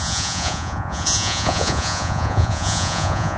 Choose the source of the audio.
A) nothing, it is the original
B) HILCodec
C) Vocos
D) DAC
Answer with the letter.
C